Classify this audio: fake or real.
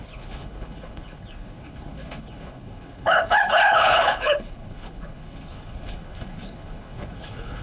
fake